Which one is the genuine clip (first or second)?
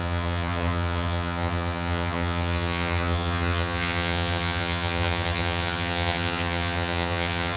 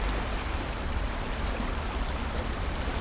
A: second